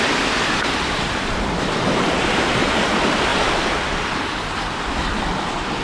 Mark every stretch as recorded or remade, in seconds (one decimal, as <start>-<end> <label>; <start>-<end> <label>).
0.0-5.8 remade